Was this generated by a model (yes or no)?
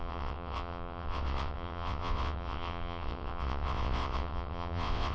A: yes